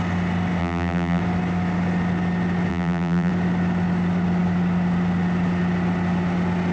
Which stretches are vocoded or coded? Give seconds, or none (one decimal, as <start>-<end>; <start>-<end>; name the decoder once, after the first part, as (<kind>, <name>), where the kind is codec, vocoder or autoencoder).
0.6-1.2 (vocoder, BigVGAN v2); 2.7-3.3